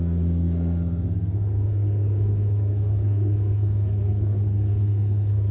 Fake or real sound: fake